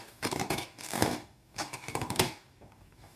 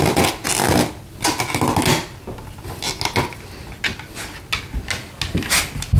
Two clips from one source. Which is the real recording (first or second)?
second